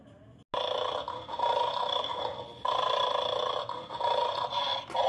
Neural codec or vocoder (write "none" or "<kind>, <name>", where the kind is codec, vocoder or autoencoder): none